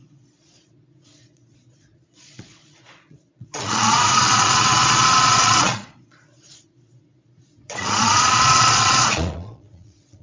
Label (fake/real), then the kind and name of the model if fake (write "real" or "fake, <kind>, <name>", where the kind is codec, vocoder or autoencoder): fake, vocoder, Vocos